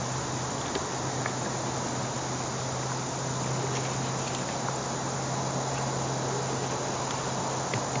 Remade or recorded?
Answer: recorded